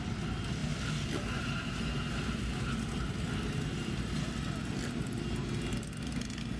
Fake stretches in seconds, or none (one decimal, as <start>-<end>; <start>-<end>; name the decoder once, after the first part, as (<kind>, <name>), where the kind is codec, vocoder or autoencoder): none